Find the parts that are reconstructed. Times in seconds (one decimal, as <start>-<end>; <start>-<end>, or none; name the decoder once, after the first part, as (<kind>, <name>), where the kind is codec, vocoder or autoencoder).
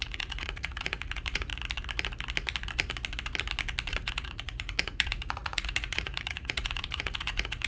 0.0-1.5 (vocoder, Vocos); 3.9-7.7